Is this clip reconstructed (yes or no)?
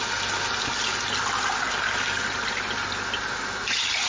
no